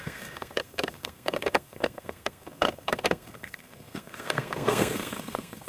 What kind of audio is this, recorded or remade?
remade